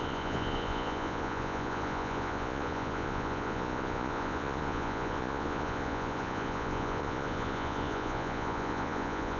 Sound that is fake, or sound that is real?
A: fake